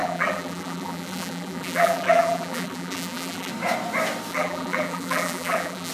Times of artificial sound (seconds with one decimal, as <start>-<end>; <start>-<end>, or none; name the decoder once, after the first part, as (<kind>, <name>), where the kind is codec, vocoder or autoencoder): 0.0-3.5 (vocoder, BigVGAN v2); 4.3-5.9

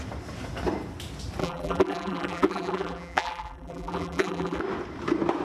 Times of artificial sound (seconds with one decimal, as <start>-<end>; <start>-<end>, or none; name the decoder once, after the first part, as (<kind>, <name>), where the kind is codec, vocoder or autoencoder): 1.4-4.6 (vocoder, BigVGAN v2)

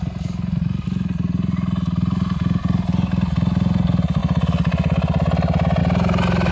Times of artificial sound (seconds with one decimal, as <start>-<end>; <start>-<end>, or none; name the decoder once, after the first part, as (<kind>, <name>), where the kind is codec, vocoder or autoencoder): none

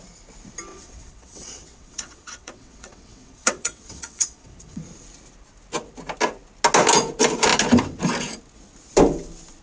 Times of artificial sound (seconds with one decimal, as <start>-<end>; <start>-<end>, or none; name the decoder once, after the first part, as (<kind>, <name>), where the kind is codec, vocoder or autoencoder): 0.7-4.8 (vocoder, WaveNeXt)

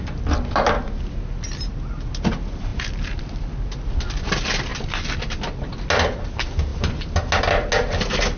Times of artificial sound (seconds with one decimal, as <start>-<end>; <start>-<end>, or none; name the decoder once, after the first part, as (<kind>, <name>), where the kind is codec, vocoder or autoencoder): none

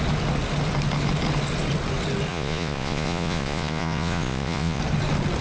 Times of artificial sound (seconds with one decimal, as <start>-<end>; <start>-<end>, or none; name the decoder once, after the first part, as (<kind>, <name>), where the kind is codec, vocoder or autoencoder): 2.3-4.8 (vocoder, Vocos)

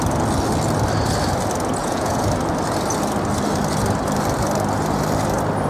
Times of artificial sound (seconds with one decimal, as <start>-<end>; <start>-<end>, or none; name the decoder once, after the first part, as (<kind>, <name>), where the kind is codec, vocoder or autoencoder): 1.8-2.3 (vocoder, Vocos)

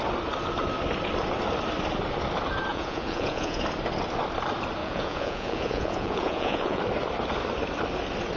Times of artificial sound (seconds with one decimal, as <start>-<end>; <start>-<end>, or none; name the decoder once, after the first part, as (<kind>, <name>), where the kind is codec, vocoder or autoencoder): 2.7-3.6 (vocoder, Vocos); 4.8-6.8